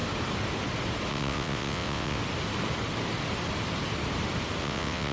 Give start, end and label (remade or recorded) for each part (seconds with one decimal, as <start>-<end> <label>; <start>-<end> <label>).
0.0-1.1 recorded; 1.1-2.2 remade; 2.2-4.6 recorded; 4.6-5.1 remade

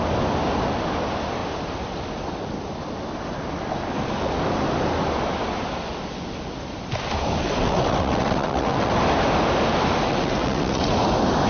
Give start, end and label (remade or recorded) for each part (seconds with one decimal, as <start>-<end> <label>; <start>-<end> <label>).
0.0-7.4 recorded; 7.4-8.9 remade; 8.9-10.1 recorded; 10.1-10.9 remade; 10.9-11.5 recorded

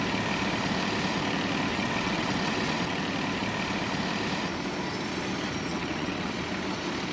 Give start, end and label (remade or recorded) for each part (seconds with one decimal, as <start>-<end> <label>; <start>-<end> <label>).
0.0-1.7 recorded; 1.7-3.0 remade; 3.0-5.7 recorded; 5.7-6.4 remade; 6.4-7.1 recorded

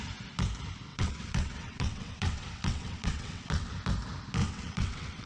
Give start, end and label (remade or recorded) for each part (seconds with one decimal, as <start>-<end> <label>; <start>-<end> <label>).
0.0-0.9 recorded; 0.9-3.7 remade; 3.7-4.4 recorded; 4.4-5.3 remade

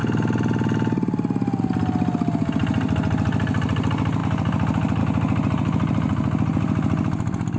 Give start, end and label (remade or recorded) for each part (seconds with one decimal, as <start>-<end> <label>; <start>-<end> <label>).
0.0-7.6 recorded

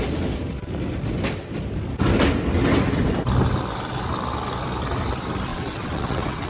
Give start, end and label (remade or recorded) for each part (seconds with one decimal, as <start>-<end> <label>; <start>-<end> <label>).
0.0-5.5 recorded; 5.5-6.5 remade

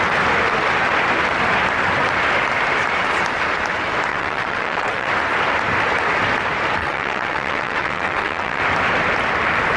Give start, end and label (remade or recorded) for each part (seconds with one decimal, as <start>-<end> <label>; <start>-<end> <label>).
0.0-4.1 recorded; 4.1-5.1 remade; 5.1-6.8 recorded; 6.8-8.6 remade; 8.6-9.8 recorded